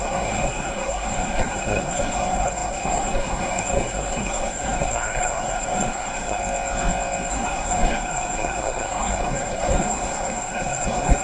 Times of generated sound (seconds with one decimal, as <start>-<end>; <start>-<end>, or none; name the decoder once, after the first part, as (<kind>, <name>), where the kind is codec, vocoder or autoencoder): 0.0-6.4 (codec, SNAC); 7.3-11.2